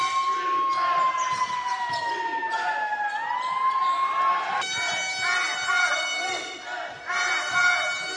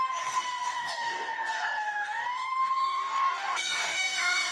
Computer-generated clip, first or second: second